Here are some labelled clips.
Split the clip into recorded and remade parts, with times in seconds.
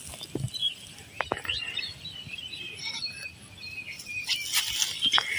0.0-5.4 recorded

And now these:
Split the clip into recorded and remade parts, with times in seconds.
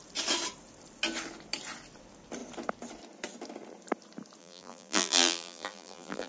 0.0-4.4 recorded; 4.4-6.3 remade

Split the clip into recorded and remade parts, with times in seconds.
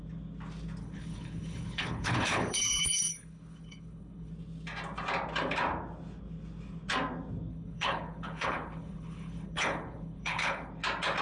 0.0-0.8 recorded; 0.8-4.3 remade; 4.3-7.5 recorded; 7.5-10.7 remade; 10.7-11.2 recorded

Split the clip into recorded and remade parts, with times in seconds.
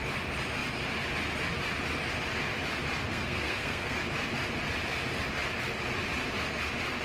0.0-3.1 recorded; 3.1-4.0 remade; 4.0-7.0 recorded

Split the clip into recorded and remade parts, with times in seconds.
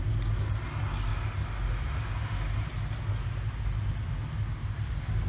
0.0-5.3 recorded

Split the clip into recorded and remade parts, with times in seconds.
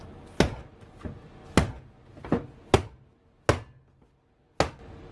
0.0-5.1 recorded